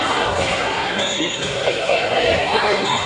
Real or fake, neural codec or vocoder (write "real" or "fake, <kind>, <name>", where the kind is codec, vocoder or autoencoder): fake, codec, SNAC